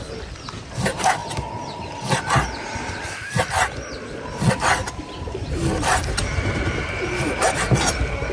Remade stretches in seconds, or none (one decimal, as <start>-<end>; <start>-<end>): none